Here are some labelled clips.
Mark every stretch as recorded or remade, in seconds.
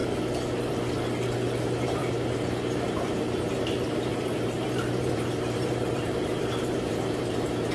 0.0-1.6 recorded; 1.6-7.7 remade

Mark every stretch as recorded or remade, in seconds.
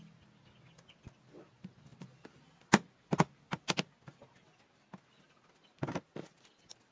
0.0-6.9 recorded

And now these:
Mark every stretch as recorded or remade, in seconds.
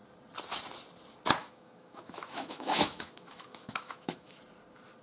0.0-1.4 recorded; 1.4-4.4 remade; 4.4-5.0 recorded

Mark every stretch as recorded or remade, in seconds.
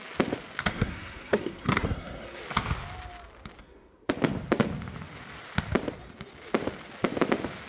0.0-0.7 recorded; 0.7-2.4 remade; 2.4-3.6 recorded; 3.6-4.1 remade; 4.1-7.7 recorded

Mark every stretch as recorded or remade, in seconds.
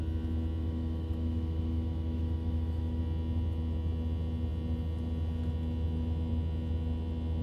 0.0-0.6 recorded; 0.6-3.0 remade; 3.0-7.4 recorded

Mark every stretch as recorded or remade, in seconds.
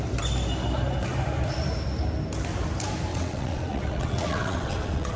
0.0-3.1 recorded; 3.1-5.2 remade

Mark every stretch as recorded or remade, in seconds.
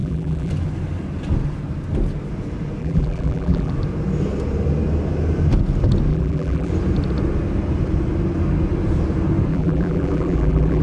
0.0-0.5 remade; 0.5-2.8 recorded; 2.8-3.7 remade; 3.7-6.1 recorded; 6.1-6.7 remade; 6.7-9.5 recorded; 9.5-10.8 remade